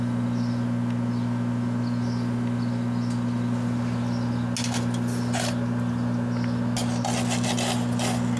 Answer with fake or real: real